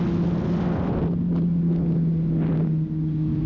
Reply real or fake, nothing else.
real